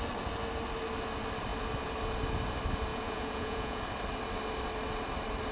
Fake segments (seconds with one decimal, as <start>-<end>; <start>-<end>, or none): 2.9-3.8